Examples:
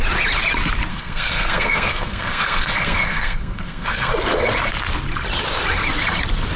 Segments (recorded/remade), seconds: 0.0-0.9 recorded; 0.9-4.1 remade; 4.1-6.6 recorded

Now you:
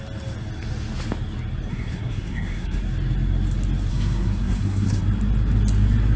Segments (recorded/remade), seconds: 0.0-1.7 recorded; 1.7-2.8 remade; 2.8-3.9 recorded; 3.9-5.0 remade; 5.0-6.2 recorded

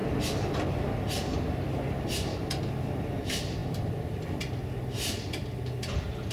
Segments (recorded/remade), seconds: 0.0-6.3 recorded

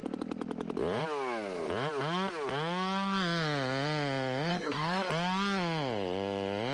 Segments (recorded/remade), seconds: 0.0-4.5 recorded; 4.5-5.1 remade; 5.1-6.7 recorded

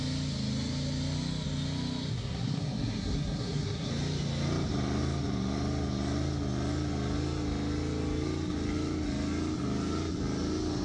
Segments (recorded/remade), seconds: 0.0-2.1 recorded; 2.1-3.9 remade; 3.9-10.8 recorded

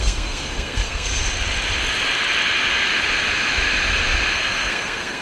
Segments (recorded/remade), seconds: 0.0-1.2 remade; 1.2-4.3 recorded; 4.3-5.2 remade